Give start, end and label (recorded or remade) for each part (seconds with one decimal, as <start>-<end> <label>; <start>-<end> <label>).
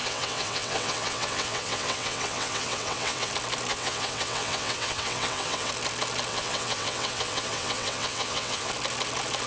0.0-3.3 remade; 3.3-3.7 recorded; 3.7-5.7 remade; 5.7-6.3 recorded; 6.3-8.7 remade; 8.7-9.5 recorded